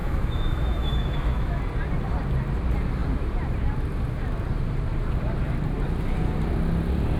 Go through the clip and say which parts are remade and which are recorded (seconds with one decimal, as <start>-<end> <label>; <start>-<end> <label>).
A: 0.0-1.6 remade; 1.6-7.2 recorded